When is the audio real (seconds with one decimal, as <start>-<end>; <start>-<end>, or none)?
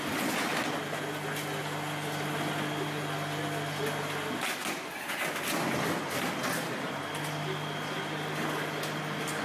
0.0-9.4